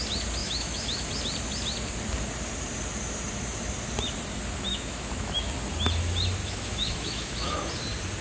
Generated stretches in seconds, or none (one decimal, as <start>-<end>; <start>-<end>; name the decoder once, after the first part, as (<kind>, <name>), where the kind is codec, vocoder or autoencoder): 0.4-1.1 (autoencoder, DAC-VAE); 4.7-5.5; 6.4-7.7